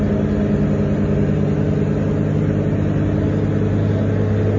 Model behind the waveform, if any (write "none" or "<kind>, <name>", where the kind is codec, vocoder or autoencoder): none